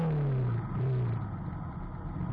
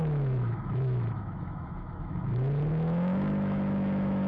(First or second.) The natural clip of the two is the first